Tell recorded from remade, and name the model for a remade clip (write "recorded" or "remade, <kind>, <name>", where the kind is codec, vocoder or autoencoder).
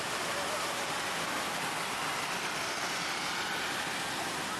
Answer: recorded